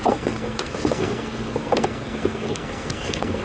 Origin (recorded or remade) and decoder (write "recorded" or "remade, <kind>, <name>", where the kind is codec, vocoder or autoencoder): remade, codec, SNAC